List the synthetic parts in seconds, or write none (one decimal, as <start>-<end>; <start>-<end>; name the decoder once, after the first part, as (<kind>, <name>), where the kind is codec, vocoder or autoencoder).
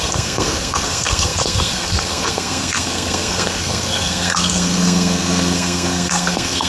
0.0-6.7 (codec, SNAC)